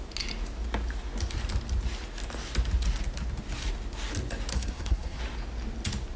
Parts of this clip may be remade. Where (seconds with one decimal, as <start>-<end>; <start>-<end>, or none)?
4.5-5.2